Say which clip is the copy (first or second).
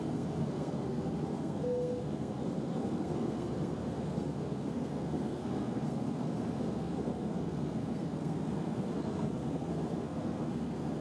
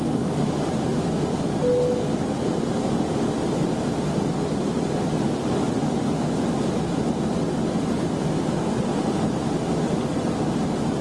first